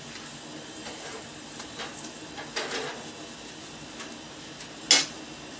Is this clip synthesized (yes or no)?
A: no